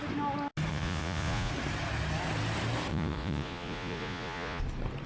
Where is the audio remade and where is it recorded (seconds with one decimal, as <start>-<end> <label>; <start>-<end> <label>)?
0.0-0.7 recorded; 0.7-1.5 remade; 1.5-2.9 recorded; 2.9-4.6 remade; 4.6-5.1 recorded